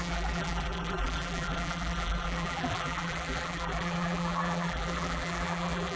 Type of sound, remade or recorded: remade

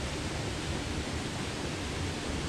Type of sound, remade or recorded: recorded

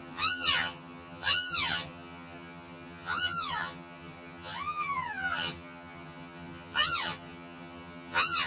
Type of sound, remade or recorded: remade